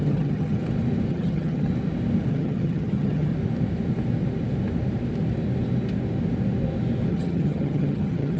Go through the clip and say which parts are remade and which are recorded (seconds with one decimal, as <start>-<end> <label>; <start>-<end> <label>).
0.0-0.6 remade; 0.6-1.1 recorded; 1.1-1.7 remade; 1.7-2.3 recorded; 2.3-3.3 remade; 3.3-7.1 recorded; 7.1-8.4 remade